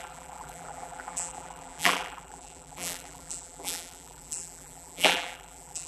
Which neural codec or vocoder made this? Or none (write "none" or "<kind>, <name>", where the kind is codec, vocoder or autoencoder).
vocoder, BigVGAN v2